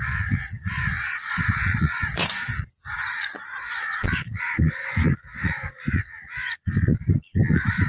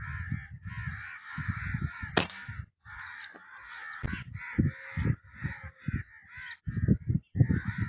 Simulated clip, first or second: first